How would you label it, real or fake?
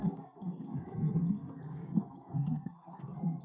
fake